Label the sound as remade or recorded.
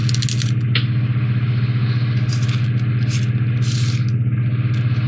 recorded